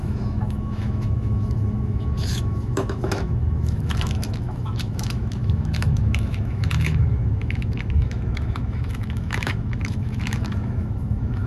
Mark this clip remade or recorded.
remade